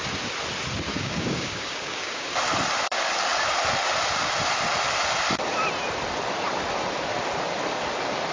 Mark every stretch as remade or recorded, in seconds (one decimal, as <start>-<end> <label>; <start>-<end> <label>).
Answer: 0.0-0.9 recorded; 0.9-2.3 remade; 2.3-8.3 recorded

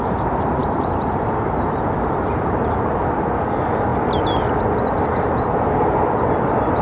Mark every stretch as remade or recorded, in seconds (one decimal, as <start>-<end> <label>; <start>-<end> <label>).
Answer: 0.0-0.6 recorded; 0.6-3.0 remade; 3.0-6.8 recorded

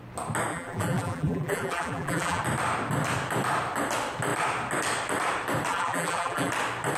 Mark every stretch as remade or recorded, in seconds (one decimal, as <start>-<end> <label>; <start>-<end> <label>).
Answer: 0.0-0.5 recorded; 0.5-2.4 remade; 2.4-5.7 recorded; 5.7-6.5 remade; 6.5-7.0 recorded

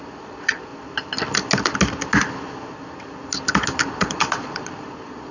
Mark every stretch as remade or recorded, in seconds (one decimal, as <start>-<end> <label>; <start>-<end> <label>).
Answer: 0.0-0.7 remade; 0.7-3.9 recorded; 3.9-5.3 remade

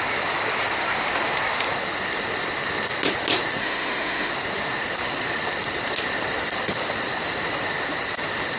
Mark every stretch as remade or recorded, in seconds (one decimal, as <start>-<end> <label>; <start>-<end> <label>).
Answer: 0.0-3.6 recorded; 3.6-4.3 remade; 4.3-8.6 recorded

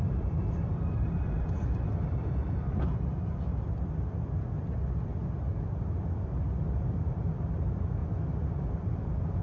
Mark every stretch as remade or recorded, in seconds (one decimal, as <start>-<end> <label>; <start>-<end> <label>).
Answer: 0.0-8.0 remade; 8.0-8.8 recorded; 8.8-9.4 remade

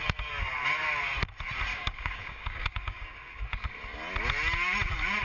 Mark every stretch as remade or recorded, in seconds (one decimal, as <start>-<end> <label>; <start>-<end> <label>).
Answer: 0.0-1.7 recorded; 1.7-3.4 remade; 3.4-5.2 recorded